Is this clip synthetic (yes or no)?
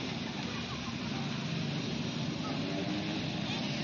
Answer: no